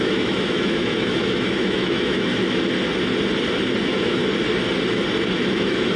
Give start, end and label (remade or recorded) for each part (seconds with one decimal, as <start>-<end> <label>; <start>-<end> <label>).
0.0-2.3 remade; 2.3-3.8 recorded; 3.8-4.2 remade; 4.2-5.5 recorded; 5.5-6.0 remade